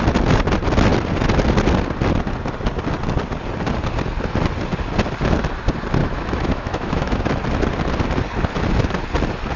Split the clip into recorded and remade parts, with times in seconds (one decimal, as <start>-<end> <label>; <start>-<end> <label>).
0.0-6.0 recorded; 6.0-7.2 remade; 7.2-9.6 recorded